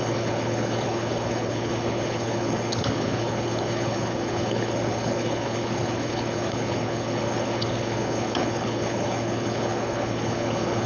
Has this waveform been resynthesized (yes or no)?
yes